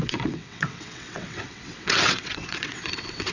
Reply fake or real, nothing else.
fake